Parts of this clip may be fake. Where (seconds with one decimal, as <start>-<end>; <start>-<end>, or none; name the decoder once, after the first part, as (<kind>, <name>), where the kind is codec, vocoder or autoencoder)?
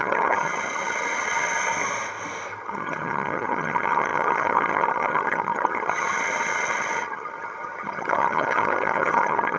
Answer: 0.0-1.8 (vocoder, HiFi-GAN); 2.6-9.6